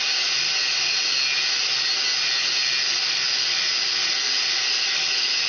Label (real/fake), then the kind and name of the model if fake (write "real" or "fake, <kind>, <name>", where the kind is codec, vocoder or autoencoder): real